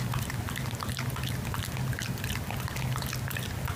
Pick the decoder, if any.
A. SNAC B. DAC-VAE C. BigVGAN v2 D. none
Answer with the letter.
D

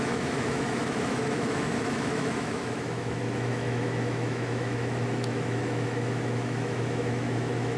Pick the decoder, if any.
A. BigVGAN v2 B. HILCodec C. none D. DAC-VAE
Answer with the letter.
D